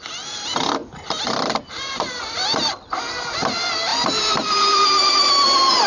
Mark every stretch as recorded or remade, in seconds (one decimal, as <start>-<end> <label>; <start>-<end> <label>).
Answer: 0.0-5.9 recorded